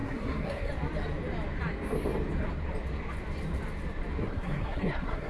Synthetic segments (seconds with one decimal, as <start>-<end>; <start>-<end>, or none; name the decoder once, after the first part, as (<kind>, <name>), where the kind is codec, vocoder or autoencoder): 0.0-0.7 (codec, SNAC); 4.2-5.3